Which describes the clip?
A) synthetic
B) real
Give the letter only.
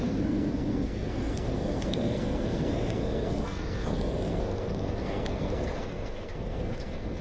A